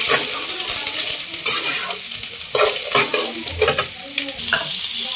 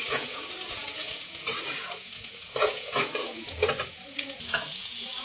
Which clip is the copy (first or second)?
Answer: second